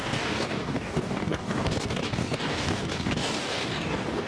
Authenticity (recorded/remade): remade